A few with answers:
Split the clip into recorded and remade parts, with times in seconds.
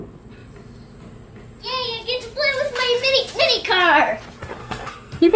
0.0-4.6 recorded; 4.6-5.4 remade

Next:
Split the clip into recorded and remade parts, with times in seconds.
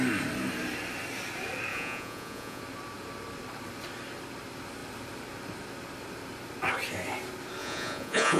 0.0-1.7 recorded; 1.7-2.6 remade; 2.6-7.6 recorded; 7.6-8.4 remade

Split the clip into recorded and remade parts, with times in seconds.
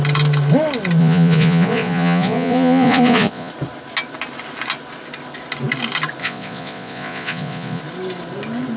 0.0-1.0 recorded; 1.0-3.5 remade; 3.5-6.2 recorded; 6.2-7.8 remade; 7.8-8.8 recorded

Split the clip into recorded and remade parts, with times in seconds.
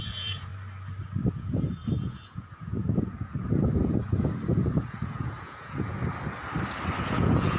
0.0-0.5 remade; 0.5-1.3 recorded; 1.3-6.0 remade; 6.0-7.0 recorded; 7.0-7.6 remade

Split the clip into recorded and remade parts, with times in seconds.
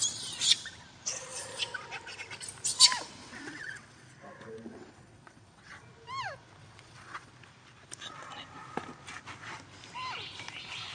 0.0-3.2 recorded; 3.2-4.1 remade; 4.1-4.7 recorded; 4.7-5.8 remade; 5.8-6.6 recorded; 6.6-7.3 remade; 7.3-10.9 recorded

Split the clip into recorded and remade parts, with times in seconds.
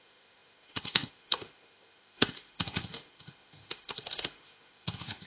0.0-5.3 remade